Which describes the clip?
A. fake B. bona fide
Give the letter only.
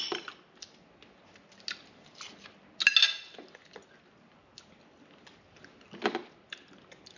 B